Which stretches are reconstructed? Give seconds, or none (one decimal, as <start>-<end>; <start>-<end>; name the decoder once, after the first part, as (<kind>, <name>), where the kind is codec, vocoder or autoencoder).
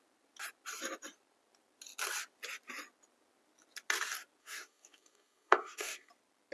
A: 4.4-6.1 (codec, DAC)